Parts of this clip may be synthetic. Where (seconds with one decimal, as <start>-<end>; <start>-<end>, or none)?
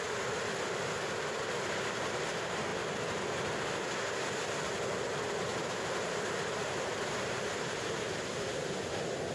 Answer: 5.5-8.0